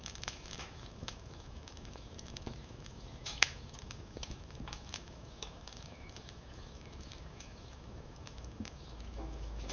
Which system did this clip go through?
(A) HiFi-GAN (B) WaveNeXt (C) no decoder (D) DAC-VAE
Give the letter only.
D